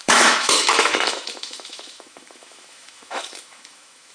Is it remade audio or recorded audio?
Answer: remade